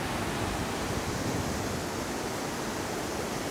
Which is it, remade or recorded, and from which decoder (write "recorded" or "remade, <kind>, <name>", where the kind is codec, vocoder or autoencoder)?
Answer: recorded